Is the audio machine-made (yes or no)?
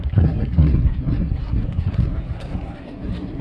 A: yes